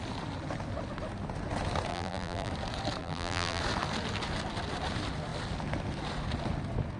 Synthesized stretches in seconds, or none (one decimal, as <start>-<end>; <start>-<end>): 1.9-2.5; 3.0-3.6